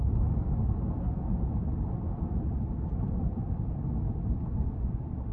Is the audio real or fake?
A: fake